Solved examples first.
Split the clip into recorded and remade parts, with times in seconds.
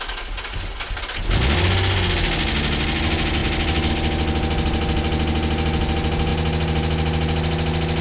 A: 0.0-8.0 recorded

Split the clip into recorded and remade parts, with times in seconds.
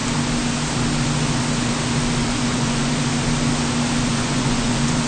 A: 0.0-2.2 recorded; 2.2-2.9 remade; 2.9-4.1 recorded; 4.1-5.1 remade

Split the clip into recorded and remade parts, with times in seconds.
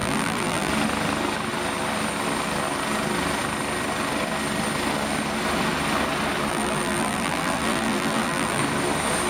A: 0.0-0.7 remade; 0.7-6.5 recorded; 6.5-8.6 remade; 8.6-9.3 recorded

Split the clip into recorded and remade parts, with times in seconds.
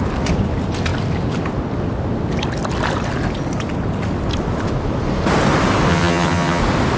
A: 0.0-5.9 recorded; 5.9-6.6 remade; 6.6-7.0 recorded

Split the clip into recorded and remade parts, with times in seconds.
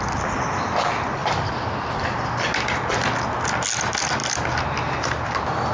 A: 0.0-5.7 recorded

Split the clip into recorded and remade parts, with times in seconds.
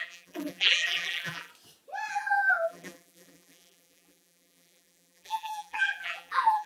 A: 0.0-1.5 remade; 1.5-2.1 recorded; 2.1-6.7 remade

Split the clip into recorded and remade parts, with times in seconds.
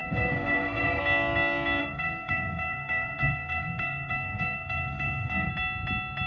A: 0.0-1.0 remade; 1.0-1.8 recorded; 1.8-5.5 remade; 5.5-6.3 recorded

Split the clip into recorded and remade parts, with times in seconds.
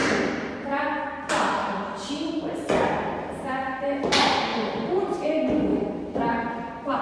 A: 0.0-1.0 remade; 1.0-1.6 recorded; 1.6-2.3 remade; 2.3-5.7 recorded; 5.7-7.0 remade